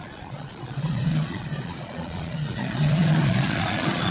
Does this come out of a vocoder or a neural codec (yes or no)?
yes